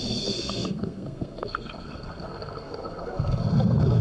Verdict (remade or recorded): remade